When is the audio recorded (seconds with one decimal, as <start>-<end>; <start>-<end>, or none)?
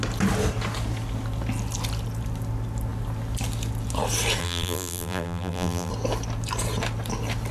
0.0-4.4; 5.9-7.5